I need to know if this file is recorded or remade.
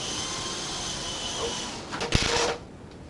recorded